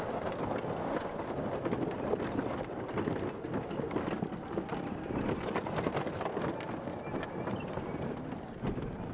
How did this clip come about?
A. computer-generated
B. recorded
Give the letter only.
B